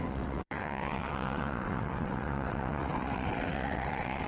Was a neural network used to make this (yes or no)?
yes